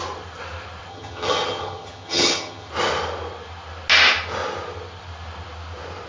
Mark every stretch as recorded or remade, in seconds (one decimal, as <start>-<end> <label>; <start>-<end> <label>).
0.0-0.9 recorded; 0.9-2.7 remade; 2.7-6.1 recorded